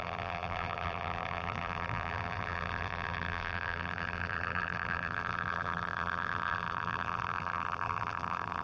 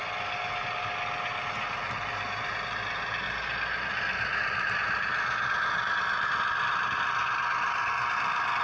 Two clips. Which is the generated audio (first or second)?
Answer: first